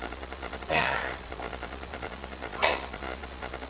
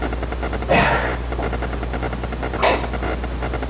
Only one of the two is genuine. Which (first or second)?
second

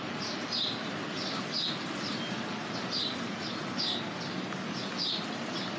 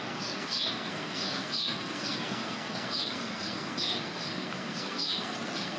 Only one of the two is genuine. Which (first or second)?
first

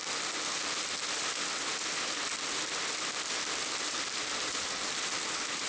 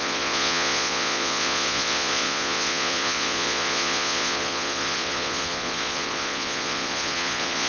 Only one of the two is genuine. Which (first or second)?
first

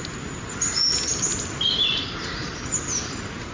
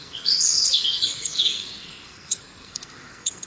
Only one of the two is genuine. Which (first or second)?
first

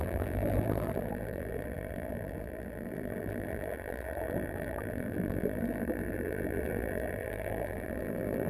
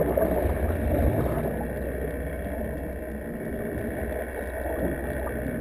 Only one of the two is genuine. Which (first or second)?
second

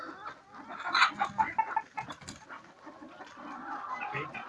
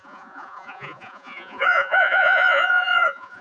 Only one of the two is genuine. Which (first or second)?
first